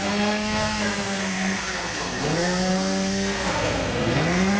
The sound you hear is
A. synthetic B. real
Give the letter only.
A